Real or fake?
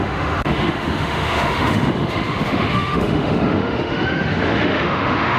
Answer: fake